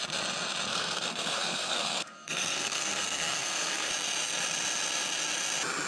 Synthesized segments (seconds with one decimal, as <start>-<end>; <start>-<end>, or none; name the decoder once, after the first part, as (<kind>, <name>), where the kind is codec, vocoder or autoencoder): 0.7-3.9 (codec, SNAC)